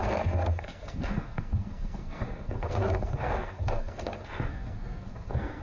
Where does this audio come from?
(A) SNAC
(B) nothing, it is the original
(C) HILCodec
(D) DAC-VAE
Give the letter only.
A